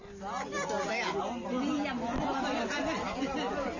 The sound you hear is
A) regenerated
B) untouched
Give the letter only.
B